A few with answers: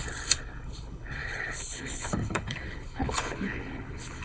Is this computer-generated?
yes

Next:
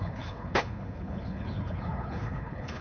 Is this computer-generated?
yes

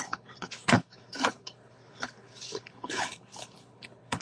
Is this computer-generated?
yes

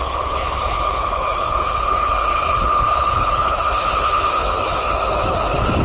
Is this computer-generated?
yes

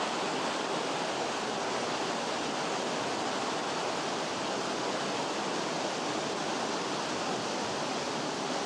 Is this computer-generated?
no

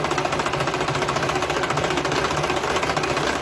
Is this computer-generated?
no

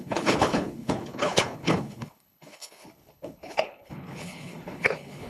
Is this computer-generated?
yes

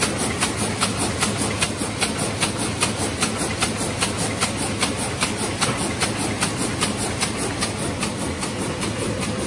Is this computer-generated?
no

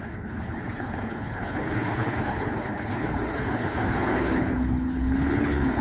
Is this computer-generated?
yes